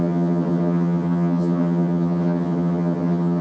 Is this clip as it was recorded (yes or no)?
no